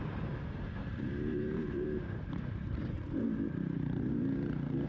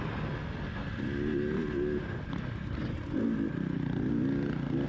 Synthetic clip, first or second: first